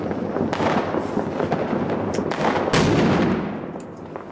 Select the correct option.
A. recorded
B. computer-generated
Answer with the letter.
A